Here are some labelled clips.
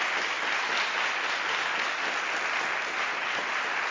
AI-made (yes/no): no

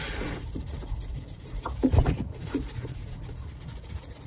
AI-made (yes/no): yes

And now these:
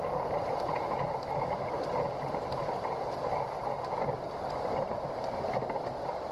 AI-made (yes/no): no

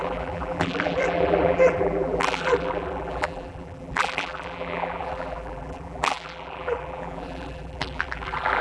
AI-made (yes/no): yes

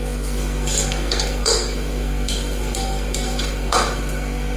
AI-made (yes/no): yes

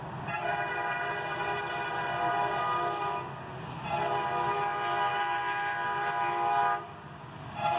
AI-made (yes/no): no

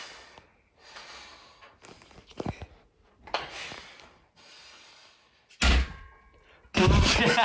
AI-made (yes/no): no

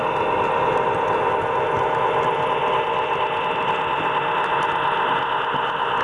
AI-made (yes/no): no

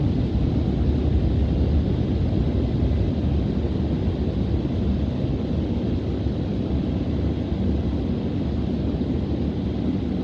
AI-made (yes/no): no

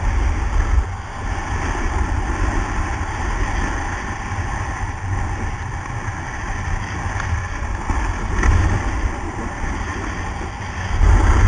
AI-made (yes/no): no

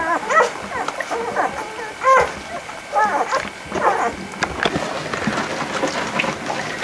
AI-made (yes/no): no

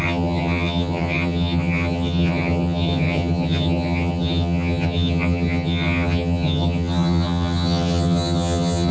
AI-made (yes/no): yes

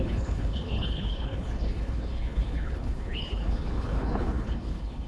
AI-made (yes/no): yes